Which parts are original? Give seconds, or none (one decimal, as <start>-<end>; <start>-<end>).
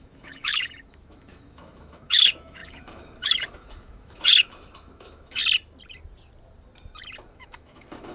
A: 5.4-7.3